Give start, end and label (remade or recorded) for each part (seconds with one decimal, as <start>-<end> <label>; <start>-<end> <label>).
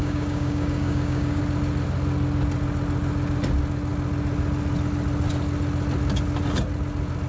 0.0-1.4 remade; 1.4-7.3 recorded